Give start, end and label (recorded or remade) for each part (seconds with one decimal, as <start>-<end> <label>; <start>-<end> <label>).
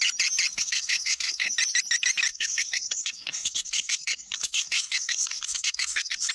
0.0-0.5 recorded; 0.5-1.5 remade; 1.5-2.3 recorded; 2.3-6.3 remade